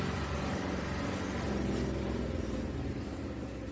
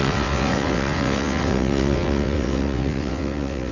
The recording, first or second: first